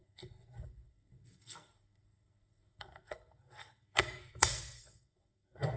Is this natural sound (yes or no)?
no